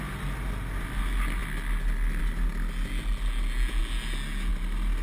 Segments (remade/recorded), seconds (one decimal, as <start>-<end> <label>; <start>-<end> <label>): 0.0-5.0 recorded